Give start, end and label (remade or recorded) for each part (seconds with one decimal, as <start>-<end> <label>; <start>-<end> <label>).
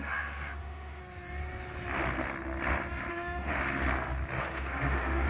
0.0-1.0 remade; 1.0-3.1 recorded; 3.1-3.6 remade; 3.6-4.4 recorded; 4.4-5.3 remade